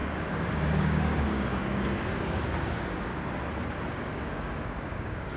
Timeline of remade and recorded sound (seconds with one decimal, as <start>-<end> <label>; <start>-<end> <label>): 0.0-3.1 remade; 3.1-3.9 recorded; 3.9-5.4 remade